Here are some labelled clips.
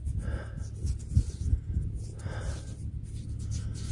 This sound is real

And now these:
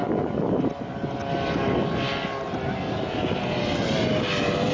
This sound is real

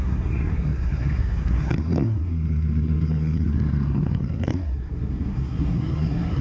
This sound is fake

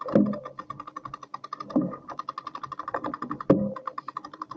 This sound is real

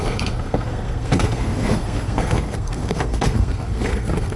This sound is fake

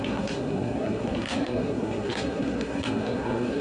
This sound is fake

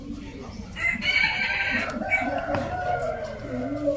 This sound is real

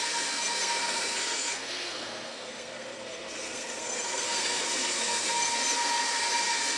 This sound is fake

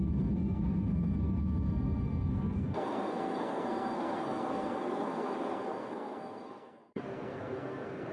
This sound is fake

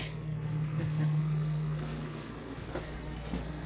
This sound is fake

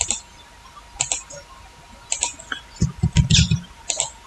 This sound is real